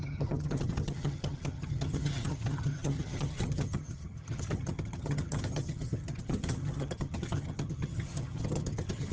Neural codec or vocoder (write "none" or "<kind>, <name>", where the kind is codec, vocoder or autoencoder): vocoder, HiFi-GAN